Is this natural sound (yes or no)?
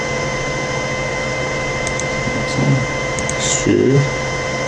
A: no